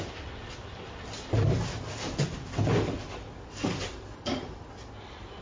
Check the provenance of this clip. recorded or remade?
recorded